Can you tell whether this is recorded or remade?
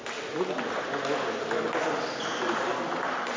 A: recorded